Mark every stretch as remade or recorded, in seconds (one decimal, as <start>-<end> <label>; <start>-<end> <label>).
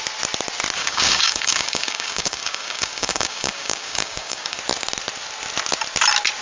0.0-0.8 recorded; 0.8-4.6 remade; 4.6-6.4 recorded